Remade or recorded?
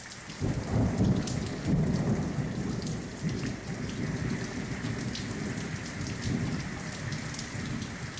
remade